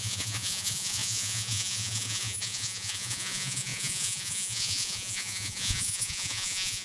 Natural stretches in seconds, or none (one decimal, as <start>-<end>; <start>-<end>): none

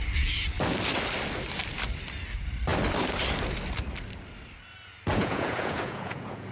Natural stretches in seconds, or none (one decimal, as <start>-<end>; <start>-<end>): 0.0-5.1

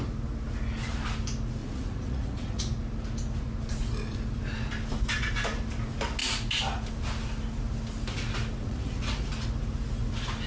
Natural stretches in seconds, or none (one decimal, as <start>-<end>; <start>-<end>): 0.0-1.6; 2.6-8.6; 9.3-10.5

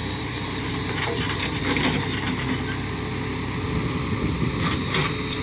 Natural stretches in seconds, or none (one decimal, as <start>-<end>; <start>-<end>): 1.6-5.4